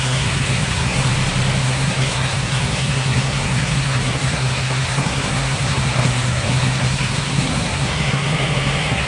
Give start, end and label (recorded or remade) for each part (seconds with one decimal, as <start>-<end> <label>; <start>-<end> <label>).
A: 0.0-1.1 remade; 1.1-1.6 recorded; 1.6-9.1 remade

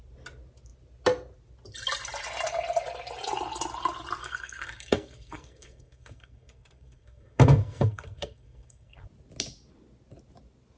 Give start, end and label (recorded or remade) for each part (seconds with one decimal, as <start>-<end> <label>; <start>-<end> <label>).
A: 0.0-4.2 recorded; 4.2-9.0 remade; 9.0-10.8 recorded